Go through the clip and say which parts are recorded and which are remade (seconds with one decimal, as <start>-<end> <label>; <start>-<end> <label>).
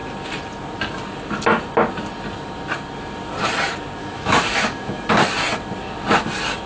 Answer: 0.0-4.0 recorded; 4.0-5.1 remade; 5.1-6.7 recorded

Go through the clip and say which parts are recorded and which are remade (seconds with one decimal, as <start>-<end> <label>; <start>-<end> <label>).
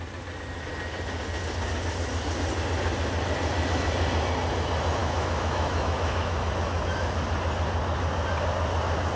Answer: 0.0-5.0 recorded; 5.0-6.5 remade; 6.5-9.2 recorded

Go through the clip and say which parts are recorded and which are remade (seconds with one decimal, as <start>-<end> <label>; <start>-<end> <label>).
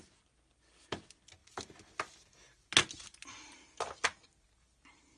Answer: 0.0-5.2 recorded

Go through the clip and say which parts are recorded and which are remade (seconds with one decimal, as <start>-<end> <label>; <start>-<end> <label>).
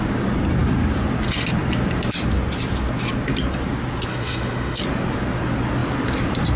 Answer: 0.0-4.1 recorded; 4.1-4.8 remade; 4.8-6.6 recorded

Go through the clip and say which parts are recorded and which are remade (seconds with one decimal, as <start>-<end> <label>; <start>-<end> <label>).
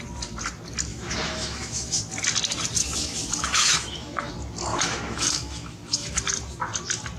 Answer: 0.0-0.9 recorded; 0.9-2.0 remade; 2.0-2.8 recorded; 2.8-4.3 remade; 4.3-4.7 recorded; 4.7-6.2 remade; 6.2-7.2 recorded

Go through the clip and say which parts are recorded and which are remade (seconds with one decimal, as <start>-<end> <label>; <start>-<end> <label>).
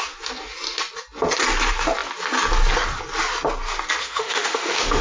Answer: 0.0-4.0 recorded; 4.0-5.0 remade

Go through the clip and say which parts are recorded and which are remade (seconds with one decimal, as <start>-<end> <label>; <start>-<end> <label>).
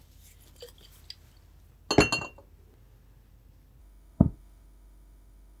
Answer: 0.0-3.8 recorded; 3.8-5.6 remade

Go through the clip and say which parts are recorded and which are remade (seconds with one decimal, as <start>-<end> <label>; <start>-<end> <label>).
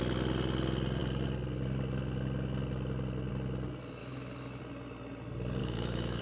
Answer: 0.0-4.0 recorded; 4.0-4.6 remade; 4.6-5.6 recorded; 5.6-6.2 remade